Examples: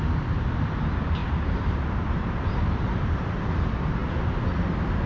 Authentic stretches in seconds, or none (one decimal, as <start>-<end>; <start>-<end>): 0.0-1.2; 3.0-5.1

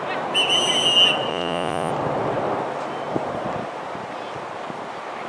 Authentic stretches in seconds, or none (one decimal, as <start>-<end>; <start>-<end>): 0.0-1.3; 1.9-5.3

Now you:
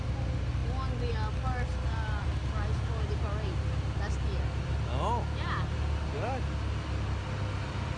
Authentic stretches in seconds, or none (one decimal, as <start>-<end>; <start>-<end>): 0.0-2.2; 2.9-8.0

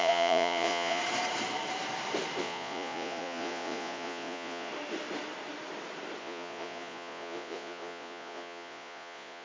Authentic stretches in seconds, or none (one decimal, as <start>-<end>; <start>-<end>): 1.0-2.4; 4.7-6.2

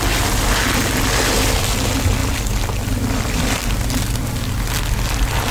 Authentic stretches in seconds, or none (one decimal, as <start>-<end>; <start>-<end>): 0.0-2.2; 3.6-5.5

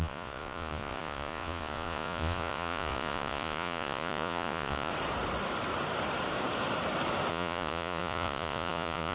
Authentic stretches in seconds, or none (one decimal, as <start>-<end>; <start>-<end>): 4.9-7.3